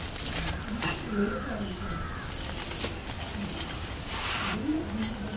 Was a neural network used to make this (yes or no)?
no